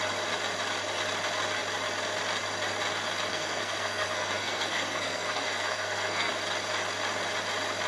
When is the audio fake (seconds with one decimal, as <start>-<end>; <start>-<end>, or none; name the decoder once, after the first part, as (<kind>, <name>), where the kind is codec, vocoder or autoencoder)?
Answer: 3.3-6.3 (codec, SNAC)